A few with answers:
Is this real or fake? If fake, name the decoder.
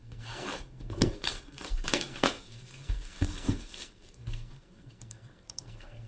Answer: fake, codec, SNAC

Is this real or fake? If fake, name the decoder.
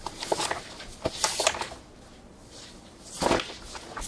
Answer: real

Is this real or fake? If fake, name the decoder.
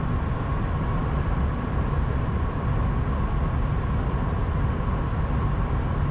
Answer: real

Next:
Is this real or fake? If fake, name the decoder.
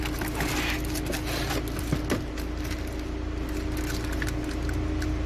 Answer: real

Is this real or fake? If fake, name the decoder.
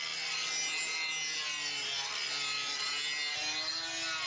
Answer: real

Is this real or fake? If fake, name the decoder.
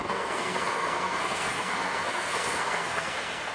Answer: fake, codec, SNAC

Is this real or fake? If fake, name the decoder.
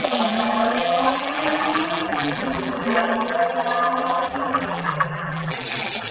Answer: fake, vocoder, BigVGAN v2